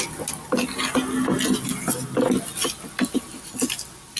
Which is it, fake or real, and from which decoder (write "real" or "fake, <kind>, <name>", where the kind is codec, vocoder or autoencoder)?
real